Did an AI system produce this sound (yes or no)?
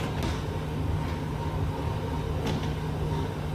no